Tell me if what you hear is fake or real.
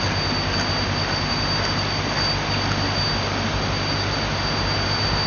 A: real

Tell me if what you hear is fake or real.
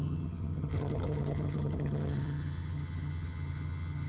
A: fake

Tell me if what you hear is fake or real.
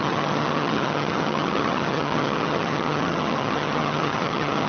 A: fake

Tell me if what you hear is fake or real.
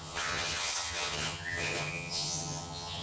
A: fake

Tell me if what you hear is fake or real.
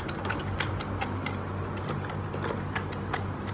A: real